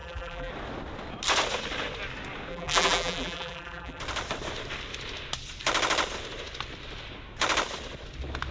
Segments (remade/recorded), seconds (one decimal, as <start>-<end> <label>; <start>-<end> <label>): 0.0-0.5 remade; 0.5-2.5 recorded; 2.5-4.0 remade; 4.0-8.5 recorded